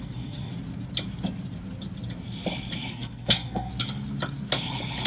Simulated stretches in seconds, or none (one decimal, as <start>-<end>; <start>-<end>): 0.0-0.5; 2.9-3.7